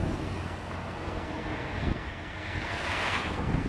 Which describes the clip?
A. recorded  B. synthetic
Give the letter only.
B